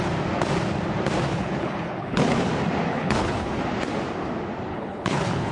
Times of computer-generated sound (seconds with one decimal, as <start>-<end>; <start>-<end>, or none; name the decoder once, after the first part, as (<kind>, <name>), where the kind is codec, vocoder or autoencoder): 1.3-2.5 (codec, HILCodec); 2.9-3.6; 4.7-5.5